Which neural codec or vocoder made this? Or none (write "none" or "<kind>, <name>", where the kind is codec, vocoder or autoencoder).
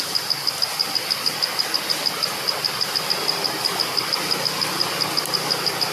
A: none